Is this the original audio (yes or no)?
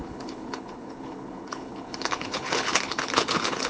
no